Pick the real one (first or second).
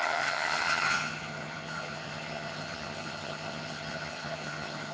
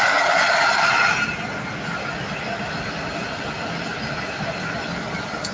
second